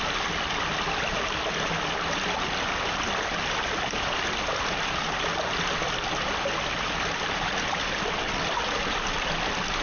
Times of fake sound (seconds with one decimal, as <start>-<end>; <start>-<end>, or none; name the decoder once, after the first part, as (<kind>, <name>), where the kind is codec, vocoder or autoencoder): none